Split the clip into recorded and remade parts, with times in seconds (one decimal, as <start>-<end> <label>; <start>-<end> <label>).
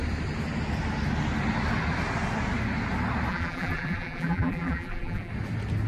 0.0-3.3 recorded; 3.3-5.3 remade; 5.3-5.9 recorded